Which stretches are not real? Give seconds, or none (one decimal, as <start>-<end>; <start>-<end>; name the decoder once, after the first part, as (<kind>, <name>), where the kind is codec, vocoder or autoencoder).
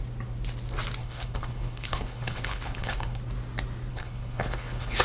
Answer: 1.0-3.2 (codec, HILCodec); 3.9-5.0